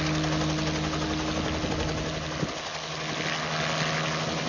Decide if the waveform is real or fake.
real